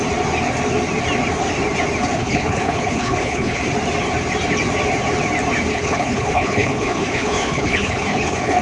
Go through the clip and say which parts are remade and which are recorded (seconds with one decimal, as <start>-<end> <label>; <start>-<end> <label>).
0.0-2.2 recorded; 2.2-3.6 remade; 3.6-5.7 recorded; 5.7-8.6 remade